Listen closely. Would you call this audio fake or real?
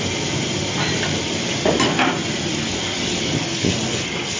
real